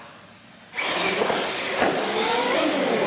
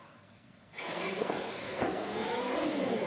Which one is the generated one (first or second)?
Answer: second